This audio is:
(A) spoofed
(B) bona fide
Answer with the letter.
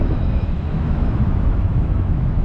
A